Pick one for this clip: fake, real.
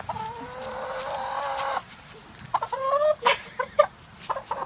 real